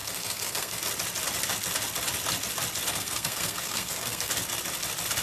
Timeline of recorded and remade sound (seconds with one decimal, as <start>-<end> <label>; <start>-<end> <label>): 0.0-0.8 remade; 0.8-2.9 recorded; 2.9-4.3 remade; 4.3-5.2 recorded